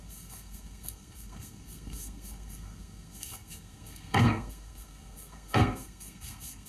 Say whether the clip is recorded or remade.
remade